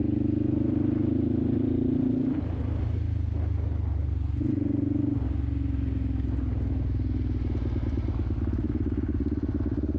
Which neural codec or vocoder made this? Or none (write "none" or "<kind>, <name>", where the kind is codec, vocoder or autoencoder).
none